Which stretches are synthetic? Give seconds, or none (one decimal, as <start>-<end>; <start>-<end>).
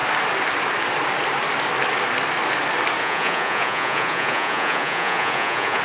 3.0-5.8